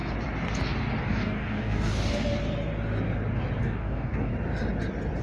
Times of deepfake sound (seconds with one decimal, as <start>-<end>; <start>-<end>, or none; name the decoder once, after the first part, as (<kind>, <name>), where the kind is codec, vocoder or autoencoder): 1.0-2.4 (codec, DAC); 3.6-4.3